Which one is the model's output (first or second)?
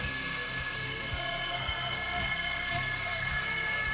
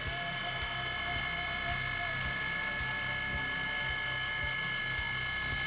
first